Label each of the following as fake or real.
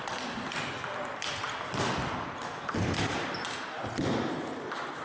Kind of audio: real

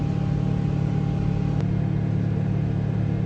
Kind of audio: real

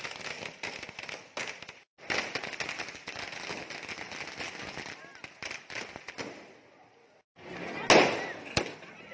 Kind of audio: real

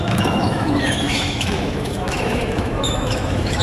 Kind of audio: fake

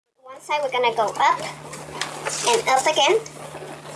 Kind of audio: real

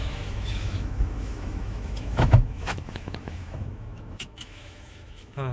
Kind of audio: fake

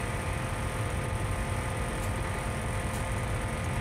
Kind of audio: real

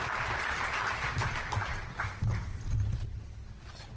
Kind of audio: real